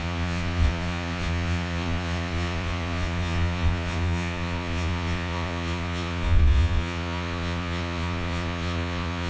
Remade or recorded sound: remade